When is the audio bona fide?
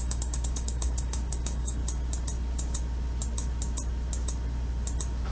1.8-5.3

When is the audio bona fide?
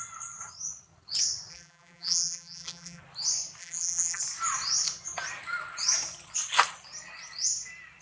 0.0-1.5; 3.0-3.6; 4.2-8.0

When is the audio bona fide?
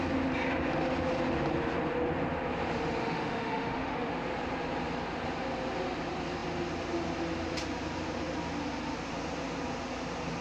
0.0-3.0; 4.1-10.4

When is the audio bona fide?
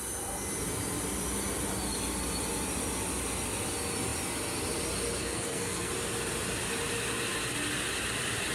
0.0-5.2; 5.9-8.5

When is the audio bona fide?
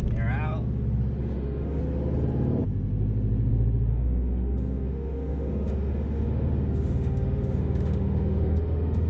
0.0-1.2; 1.8-3.9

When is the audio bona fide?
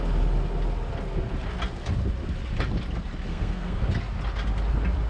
0.0-3.3; 3.9-5.1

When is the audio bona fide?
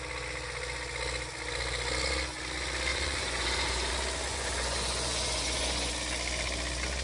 0.0-2.9; 3.9-4.3; 5.9-7.0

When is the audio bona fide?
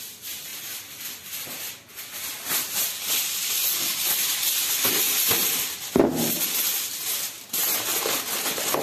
0.0-8.8